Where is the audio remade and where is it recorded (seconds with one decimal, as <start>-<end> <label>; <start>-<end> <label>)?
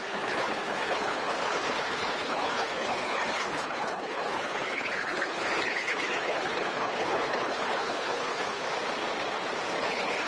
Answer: 0.0-8.6 remade; 8.6-9.8 recorded; 9.8-10.3 remade